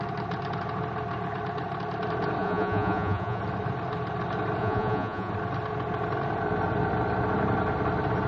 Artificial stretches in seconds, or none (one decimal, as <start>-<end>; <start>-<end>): 2.4-3.4; 4.6-5.3